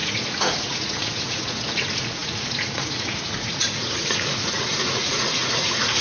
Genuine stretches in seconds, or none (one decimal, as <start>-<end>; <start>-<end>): none

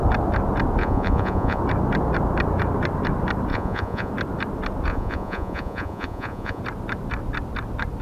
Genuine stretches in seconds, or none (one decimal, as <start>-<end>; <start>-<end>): 0.0-0.8; 1.6-3.5; 4.1-4.9; 6.6-8.0

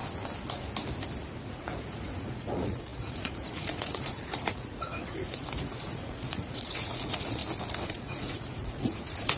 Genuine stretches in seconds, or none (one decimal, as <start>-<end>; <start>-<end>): 0.0-1.5; 7.4-7.9

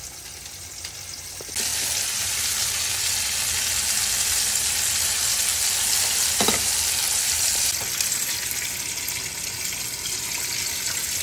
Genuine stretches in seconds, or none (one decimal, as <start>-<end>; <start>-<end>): 0.0-11.2